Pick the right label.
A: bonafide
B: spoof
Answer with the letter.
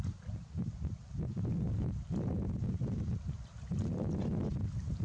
A